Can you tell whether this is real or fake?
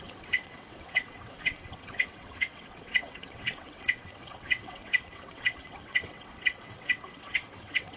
fake